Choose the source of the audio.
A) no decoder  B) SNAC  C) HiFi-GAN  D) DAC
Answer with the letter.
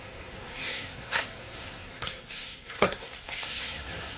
B